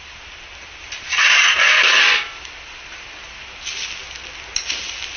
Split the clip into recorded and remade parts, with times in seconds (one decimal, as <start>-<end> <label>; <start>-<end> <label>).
0.0-0.8 recorded; 0.8-2.2 remade; 2.2-5.2 recorded